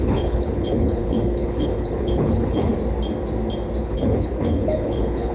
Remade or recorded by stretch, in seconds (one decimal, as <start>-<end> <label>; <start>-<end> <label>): 0.0-2.7 remade; 2.7-3.8 recorded; 3.8-5.3 remade